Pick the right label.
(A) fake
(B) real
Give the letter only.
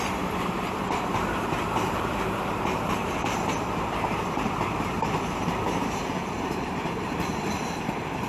A